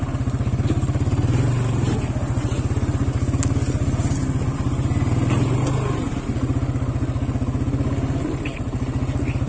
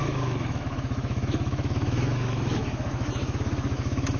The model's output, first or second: second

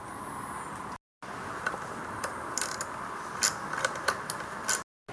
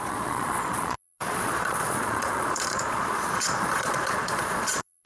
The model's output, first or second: second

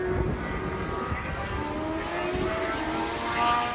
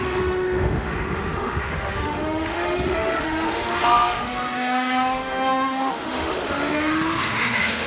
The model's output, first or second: second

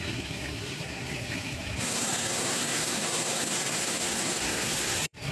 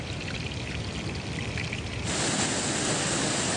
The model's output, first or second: first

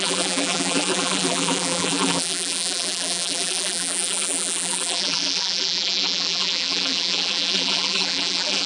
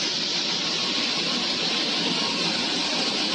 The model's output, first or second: first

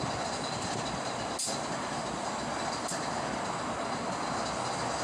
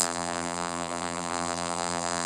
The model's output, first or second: second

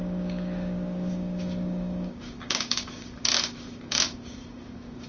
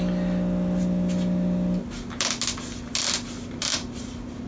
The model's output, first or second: first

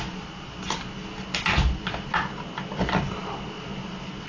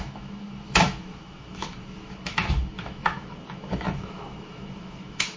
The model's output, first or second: second